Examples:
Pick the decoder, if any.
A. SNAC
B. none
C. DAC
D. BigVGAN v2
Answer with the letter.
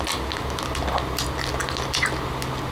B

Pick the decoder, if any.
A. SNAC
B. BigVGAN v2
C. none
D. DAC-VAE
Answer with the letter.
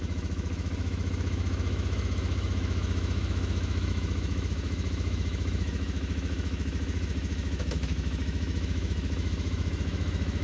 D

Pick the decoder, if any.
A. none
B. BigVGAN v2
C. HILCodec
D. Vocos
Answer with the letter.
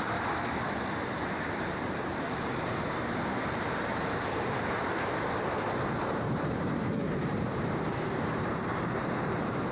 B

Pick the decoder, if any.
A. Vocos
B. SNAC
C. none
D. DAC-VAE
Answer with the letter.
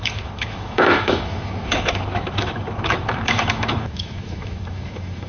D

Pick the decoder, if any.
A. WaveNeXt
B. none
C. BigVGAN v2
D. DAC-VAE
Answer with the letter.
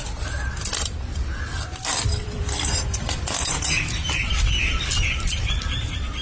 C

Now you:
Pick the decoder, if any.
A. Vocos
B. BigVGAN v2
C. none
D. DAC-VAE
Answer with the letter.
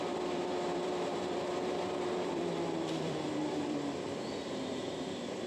B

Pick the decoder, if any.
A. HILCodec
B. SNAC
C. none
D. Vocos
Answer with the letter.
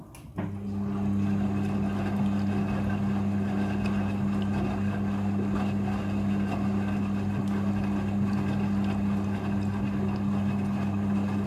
C